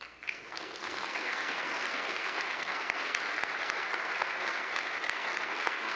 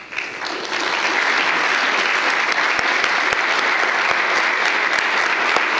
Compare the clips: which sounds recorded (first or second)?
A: second